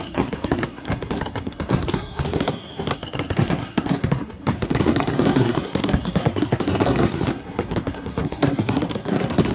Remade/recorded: remade